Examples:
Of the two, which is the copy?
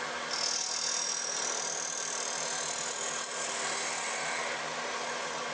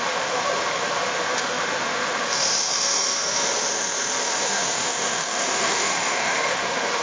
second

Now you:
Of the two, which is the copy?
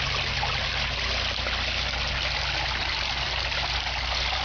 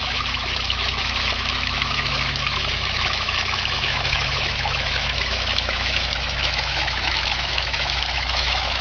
second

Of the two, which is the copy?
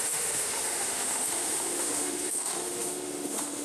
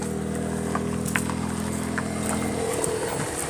first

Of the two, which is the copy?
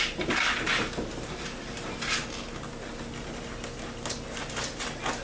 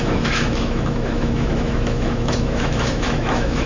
second